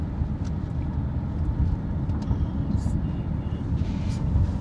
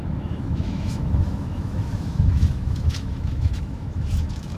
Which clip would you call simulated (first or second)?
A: second